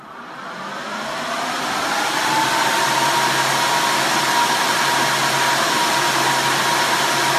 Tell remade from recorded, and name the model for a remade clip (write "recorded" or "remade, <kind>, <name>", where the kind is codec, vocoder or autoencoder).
recorded